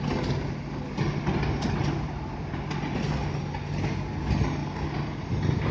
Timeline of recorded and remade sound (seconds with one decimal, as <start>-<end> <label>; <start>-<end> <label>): 0.0-5.7 recorded